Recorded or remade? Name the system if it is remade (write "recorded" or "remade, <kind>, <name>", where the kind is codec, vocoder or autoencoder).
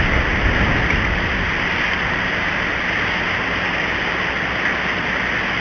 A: recorded